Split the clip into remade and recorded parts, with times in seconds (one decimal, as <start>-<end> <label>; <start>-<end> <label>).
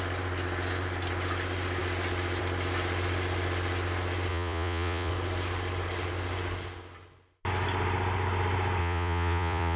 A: 0.0-4.3 recorded; 4.3-5.1 remade; 5.1-8.8 recorded; 8.8-9.8 remade